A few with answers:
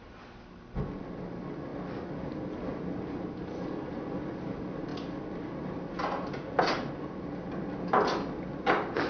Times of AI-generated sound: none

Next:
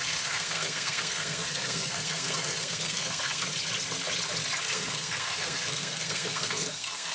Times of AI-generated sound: 0.0-3.5 (codec, SNAC); 4.6-7.1

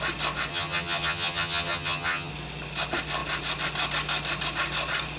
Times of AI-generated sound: 0.5-2.3 (vocoder, HiFi-GAN)

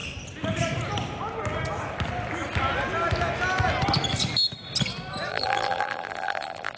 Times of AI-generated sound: 5.3-6.8 (vocoder, BigVGAN v2)

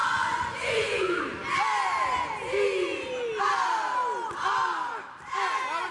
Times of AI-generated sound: 0.0-1.2 (vocoder, Vocos)